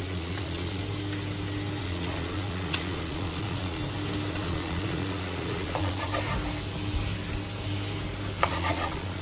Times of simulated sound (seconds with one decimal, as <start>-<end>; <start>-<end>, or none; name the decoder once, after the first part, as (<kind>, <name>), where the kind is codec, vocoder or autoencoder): 0.0-0.8 (vocoder, Vocos); 1.8-3.8; 4.3-6.1; 8.4-9.2